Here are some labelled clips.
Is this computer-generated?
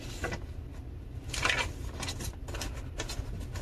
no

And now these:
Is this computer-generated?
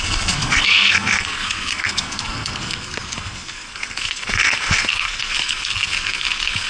yes